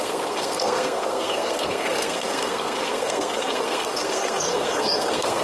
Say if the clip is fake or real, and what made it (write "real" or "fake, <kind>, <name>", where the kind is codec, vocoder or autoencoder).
fake, codec, SNAC